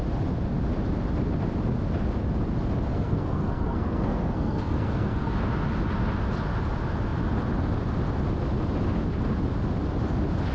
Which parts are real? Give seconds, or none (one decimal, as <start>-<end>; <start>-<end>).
0.0-2.9; 5.3-10.5